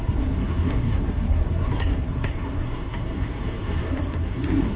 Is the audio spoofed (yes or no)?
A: yes